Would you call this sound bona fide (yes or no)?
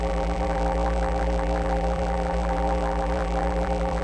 no